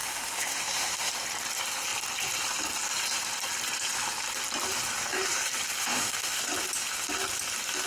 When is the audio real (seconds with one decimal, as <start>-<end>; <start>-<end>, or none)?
1.1-5.8; 6.4-7.9